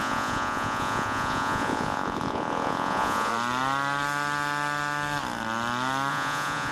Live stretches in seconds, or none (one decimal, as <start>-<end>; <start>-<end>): 3.3-6.1